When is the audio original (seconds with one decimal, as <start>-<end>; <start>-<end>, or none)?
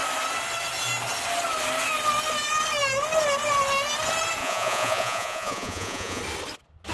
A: 0.0-4.4; 6.2-6.9